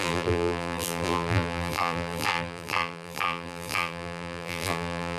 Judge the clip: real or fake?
fake